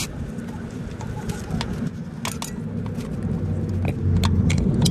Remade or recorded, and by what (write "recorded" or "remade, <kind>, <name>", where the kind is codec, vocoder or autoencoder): recorded